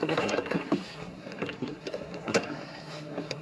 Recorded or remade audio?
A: remade